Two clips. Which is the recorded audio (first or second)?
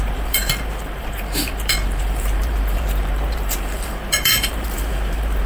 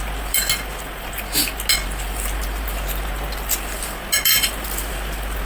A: second